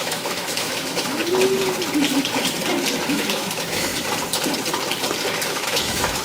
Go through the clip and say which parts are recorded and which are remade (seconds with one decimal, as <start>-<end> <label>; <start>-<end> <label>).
0.0-1.2 remade; 1.2-3.1 recorded; 3.1-3.9 remade; 3.9-5.5 recorded; 5.5-6.2 remade